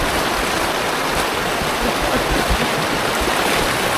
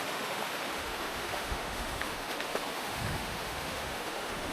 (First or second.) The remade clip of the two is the second